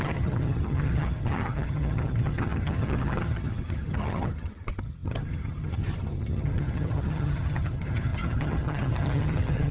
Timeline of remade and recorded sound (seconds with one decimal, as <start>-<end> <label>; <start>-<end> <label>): 0.0-9.7 remade